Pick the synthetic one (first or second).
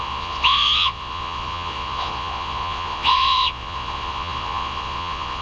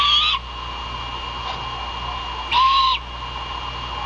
first